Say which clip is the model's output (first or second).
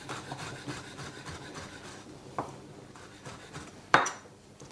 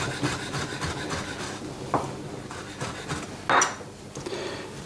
first